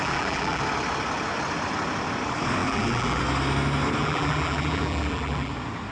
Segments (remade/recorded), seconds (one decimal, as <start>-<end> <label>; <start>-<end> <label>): 0.0-0.6 remade; 0.6-2.6 recorded; 2.6-3.2 remade; 3.2-4.0 recorded; 4.0-5.5 remade; 5.5-5.9 recorded